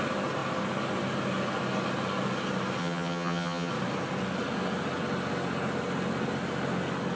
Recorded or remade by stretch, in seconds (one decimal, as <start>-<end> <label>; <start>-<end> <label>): 0.0-2.8 recorded; 2.8-3.7 remade; 3.7-7.2 recorded